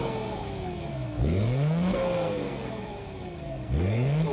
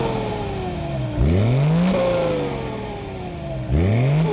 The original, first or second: second